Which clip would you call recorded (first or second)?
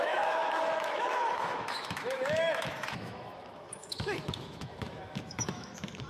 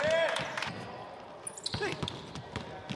second